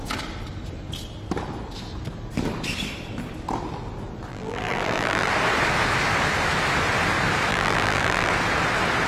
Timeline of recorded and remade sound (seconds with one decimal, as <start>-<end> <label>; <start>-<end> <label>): 0.0-4.3 recorded; 4.3-5.3 remade; 5.3-7.5 recorded; 7.5-8.3 remade; 8.3-9.1 recorded